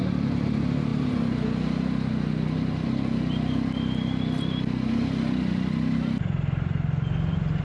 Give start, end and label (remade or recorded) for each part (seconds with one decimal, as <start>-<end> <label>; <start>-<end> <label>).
0.0-7.6 recorded